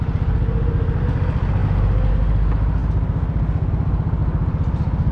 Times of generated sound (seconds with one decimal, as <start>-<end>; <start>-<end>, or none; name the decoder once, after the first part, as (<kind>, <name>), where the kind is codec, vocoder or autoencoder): none